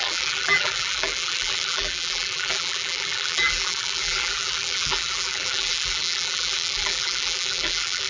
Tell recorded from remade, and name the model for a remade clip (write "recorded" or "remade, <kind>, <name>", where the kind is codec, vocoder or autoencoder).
remade, vocoder, BigVGAN v2